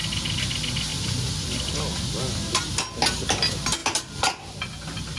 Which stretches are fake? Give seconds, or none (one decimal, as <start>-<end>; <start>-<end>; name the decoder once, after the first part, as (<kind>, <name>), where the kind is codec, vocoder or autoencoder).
0.9-2.2 (vocoder, BigVGAN v2)